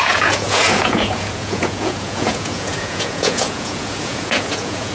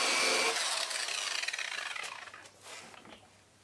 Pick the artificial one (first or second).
first